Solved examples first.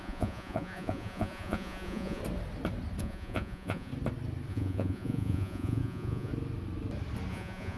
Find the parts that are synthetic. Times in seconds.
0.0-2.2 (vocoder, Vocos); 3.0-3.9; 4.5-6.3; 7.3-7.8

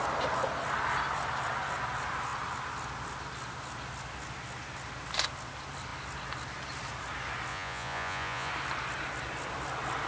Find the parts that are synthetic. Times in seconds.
7.5-8.5 (vocoder, Vocos)

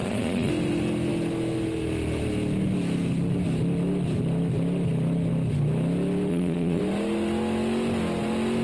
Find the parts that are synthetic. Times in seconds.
0.0-0.5 (vocoder, Vocos); 6.3-6.8

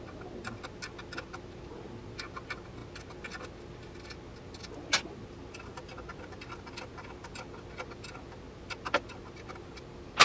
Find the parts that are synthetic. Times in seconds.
none

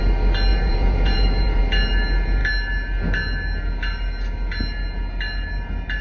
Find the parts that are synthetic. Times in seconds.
0.5-1.6 (vocoder, Vocos)

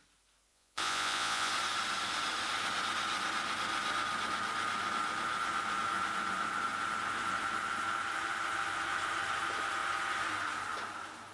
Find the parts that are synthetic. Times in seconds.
0.5-1.5 (vocoder, Vocos)

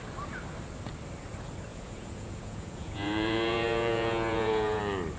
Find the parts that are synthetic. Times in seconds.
1.7-4.8 (vocoder, Vocos)